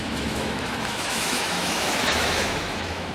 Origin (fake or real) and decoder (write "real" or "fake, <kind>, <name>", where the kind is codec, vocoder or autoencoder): fake, autoencoder, DAC-VAE